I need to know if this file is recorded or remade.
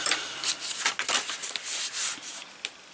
recorded